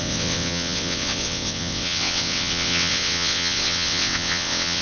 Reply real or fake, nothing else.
fake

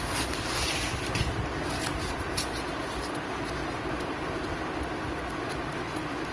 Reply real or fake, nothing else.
real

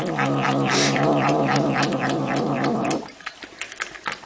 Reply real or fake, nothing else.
real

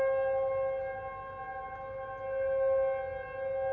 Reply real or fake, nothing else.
real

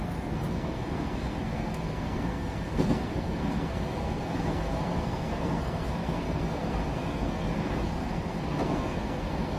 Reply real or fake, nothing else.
fake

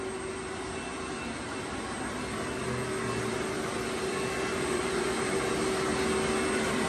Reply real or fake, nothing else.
real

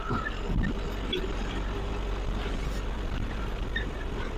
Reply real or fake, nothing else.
real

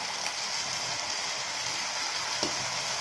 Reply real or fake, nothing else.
real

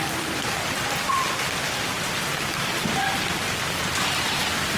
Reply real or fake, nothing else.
real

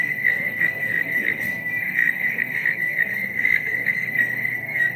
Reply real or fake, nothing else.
fake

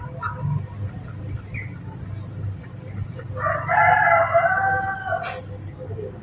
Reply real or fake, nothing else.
real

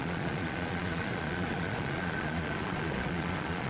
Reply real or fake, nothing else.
fake